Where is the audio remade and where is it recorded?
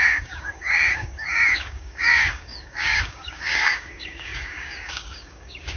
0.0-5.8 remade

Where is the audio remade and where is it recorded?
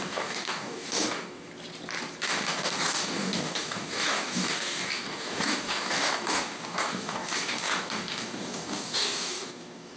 0.0-1.5 remade; 1.5-2.2 recorded; 2.2-10.0 remade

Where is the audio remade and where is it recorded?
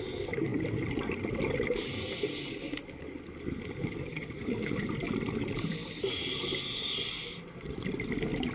0.0-4.1 recorded; 4.1-4.8 remade; 4.8-8.5 recorded